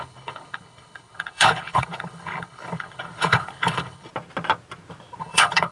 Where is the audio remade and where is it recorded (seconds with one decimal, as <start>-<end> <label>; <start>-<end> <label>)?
0.0-4.1 remade; 4.1-5.2 recorded; 5.2-5.7 remade